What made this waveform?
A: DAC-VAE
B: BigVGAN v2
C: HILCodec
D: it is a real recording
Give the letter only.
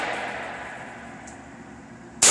D